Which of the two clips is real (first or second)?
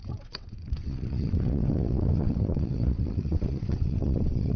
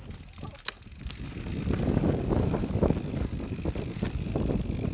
second